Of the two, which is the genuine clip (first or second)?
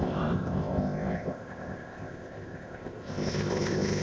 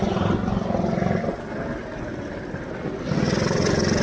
second